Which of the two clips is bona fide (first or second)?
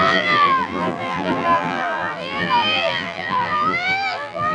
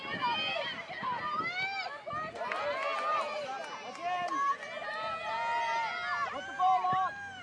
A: second